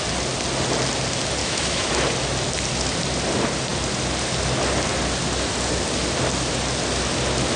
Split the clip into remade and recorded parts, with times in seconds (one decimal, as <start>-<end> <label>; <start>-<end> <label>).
0.0-1.4 recorded; 1.4-1.9 remade; 1.9-7.6 recorded